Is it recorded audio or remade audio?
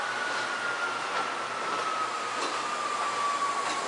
recorded